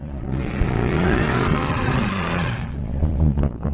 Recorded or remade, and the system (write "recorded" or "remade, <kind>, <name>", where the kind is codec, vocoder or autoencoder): remade, vocoder, Vocos